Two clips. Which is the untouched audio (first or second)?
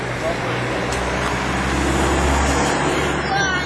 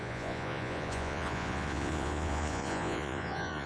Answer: first